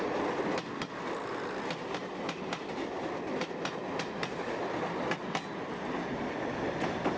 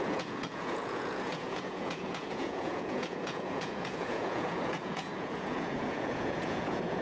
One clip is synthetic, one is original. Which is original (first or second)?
first